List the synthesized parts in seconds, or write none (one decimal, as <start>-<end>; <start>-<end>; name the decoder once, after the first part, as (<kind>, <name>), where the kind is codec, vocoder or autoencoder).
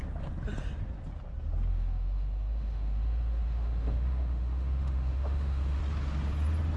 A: 1.7-5.8 (autoencoder, DAC-VAE)